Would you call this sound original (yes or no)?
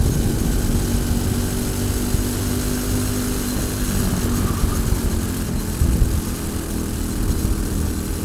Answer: yes